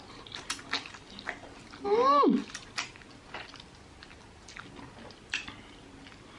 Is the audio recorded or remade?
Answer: recorded